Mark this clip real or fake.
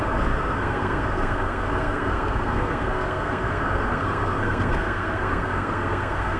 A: fake